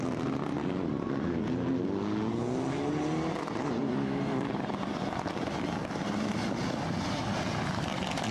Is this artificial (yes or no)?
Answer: no